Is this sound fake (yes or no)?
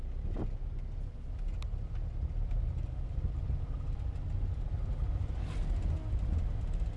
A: no